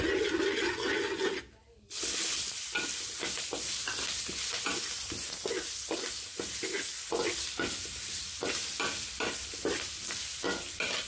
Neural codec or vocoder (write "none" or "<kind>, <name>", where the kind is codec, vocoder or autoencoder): none